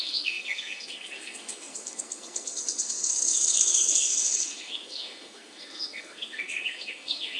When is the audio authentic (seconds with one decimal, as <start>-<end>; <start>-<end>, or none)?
none